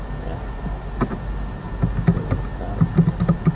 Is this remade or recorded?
recorded